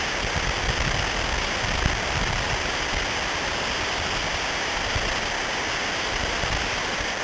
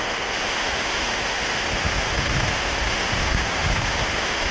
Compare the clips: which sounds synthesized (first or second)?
second